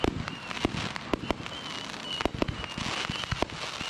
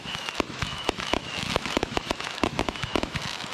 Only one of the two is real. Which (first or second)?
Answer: first